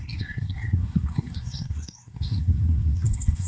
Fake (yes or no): yes